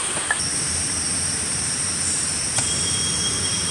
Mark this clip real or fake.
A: fake